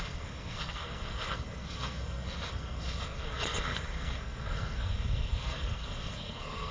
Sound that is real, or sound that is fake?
fake